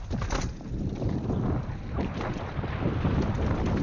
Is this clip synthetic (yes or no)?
no